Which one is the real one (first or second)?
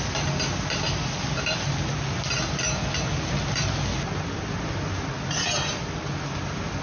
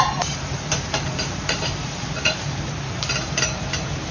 first